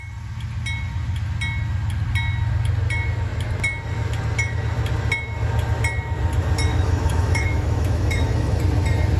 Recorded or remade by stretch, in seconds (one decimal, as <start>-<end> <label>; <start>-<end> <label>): 0.0-6.7 recorded; 6.7-8.6 remade; 8.6-9.2 recorded